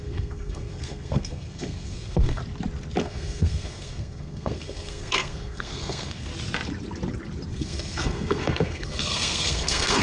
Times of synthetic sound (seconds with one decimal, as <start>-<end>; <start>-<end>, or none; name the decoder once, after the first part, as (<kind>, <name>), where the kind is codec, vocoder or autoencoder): 0.0-2.4 (codec, SNAC); 3.0-6.3; 7.5-10.0

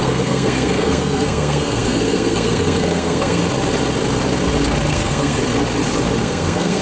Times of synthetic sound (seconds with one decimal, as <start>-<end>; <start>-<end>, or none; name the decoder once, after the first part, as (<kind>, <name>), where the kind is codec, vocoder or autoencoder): 0.0-3.4 (codec, SNAC); 4.9-5.4; 6.2-6.8